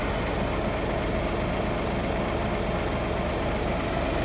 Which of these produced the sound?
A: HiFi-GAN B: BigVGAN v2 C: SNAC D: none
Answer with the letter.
D